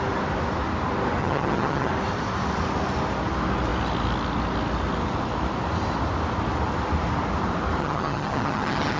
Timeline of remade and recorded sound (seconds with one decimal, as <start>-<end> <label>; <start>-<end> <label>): 0.0-1.2 recorded; 1.2-1.9 remade; 1.9-7.8 recorded; 7.8-9.0 remade